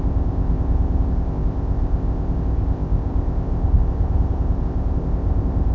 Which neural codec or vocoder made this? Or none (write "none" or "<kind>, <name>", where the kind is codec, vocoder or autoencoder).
codec, ZipCodec